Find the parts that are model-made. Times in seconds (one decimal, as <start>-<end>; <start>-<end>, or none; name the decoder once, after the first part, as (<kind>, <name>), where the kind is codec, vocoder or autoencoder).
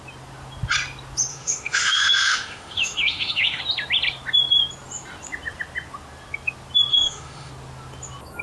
1.3-3.6 (autoencoder, DAC-VAE); 6.9-7.5